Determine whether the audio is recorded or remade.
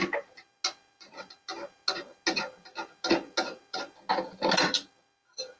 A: recorded